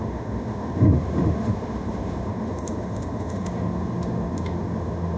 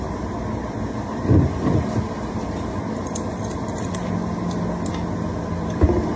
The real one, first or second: second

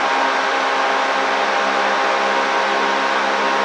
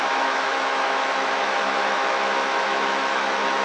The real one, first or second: first